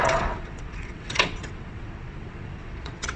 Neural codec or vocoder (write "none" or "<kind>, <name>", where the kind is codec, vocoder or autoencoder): vocoder, WaveNeXt